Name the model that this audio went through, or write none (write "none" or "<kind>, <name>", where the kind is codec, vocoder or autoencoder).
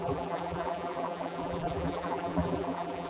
vocoder, BigVGAN v2